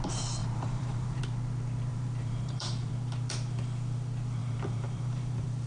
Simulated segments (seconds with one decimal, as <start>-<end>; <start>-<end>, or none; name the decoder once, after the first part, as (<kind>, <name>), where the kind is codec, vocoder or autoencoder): 0.4-1.2 (vocoder, BigVGAN v2); 1.9-2.9; 4.4-5.7